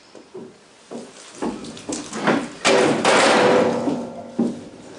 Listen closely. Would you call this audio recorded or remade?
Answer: recorded